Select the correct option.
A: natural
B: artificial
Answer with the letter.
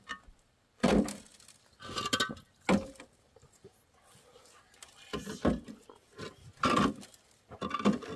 A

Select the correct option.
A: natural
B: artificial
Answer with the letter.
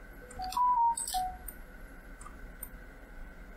A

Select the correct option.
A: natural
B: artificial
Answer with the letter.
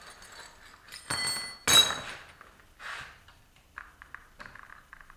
A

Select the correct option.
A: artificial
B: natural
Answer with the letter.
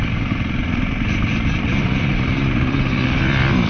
A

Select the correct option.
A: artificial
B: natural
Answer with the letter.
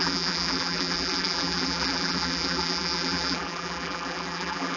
A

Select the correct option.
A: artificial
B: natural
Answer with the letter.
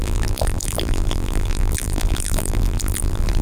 A